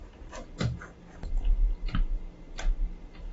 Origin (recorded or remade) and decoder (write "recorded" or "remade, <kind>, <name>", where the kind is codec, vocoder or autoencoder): recorded